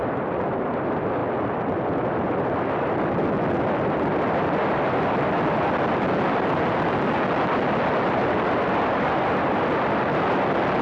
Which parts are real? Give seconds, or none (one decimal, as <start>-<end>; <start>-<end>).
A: 8.2-9.6